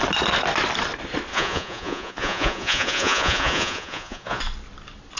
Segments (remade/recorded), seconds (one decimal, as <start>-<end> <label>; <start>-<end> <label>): 0.0-1.3 recorded; 1.3-4.4 remade; 4.4-5.2 recorded